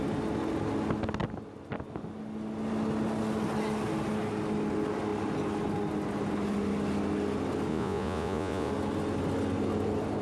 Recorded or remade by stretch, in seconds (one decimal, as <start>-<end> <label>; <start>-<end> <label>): 0.0-7.7 recorded; 7.7-8.7 remade; 8.7-10.2 recorded